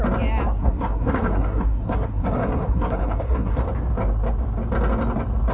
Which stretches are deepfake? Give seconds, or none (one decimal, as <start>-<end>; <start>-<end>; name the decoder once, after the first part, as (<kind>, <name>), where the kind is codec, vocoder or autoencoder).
0.6-3.6 (codec, SNAC)